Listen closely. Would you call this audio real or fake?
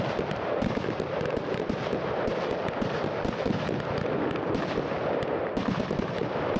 real